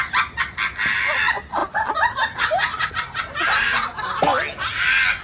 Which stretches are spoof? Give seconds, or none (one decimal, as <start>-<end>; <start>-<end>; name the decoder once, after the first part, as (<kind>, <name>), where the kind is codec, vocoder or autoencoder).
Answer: none